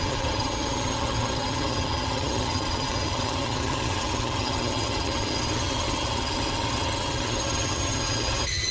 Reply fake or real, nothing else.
fake